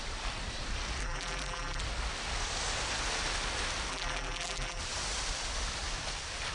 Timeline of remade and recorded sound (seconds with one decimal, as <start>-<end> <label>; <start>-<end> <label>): 0.0-1.0 recorded; 1.0-1.8 remade; 1.8-3.9 recorded; 3.9-4.8 remade; 4.8-6.5 recorded